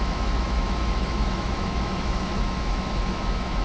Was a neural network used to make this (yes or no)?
yes